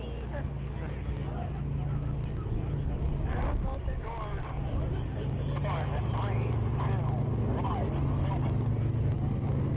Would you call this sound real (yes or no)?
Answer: yes